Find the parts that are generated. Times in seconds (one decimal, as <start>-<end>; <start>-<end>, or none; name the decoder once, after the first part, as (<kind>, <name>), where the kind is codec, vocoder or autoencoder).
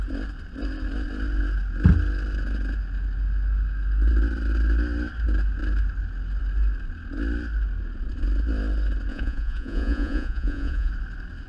9.1-10.9 (vocoder, Vocos)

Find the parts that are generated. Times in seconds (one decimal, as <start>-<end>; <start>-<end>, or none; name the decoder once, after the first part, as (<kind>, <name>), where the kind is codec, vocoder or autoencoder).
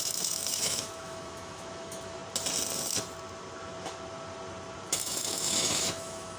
0.0-2.2 (autoencoder, DAC-VAE); 4.9-6.4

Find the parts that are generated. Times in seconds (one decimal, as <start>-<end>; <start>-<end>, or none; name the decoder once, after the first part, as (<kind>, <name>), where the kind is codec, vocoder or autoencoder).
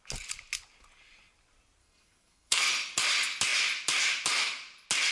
1.8-2.7 (codec, SNAC)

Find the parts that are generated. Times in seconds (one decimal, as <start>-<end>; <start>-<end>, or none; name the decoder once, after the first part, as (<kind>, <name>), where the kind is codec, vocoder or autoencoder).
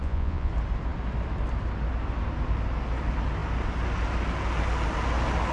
0.0-0.5 (vocoder, Vocos)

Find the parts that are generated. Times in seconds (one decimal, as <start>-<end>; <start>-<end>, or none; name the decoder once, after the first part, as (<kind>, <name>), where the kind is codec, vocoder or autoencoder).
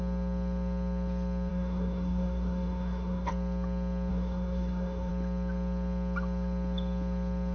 1.5-3.3 (codec, DAC); 4.1-5.1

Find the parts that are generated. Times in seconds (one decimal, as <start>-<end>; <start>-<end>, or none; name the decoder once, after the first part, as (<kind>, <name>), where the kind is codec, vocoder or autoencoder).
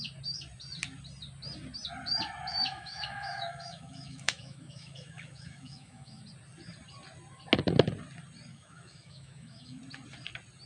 2.5-6.2 (autoencoder, DAC-VAE); 8.5-9.8